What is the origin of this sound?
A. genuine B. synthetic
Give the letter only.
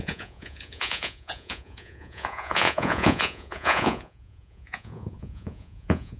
B